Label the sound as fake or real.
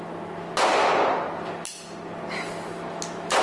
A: real